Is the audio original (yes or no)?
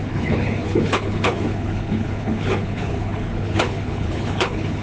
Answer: no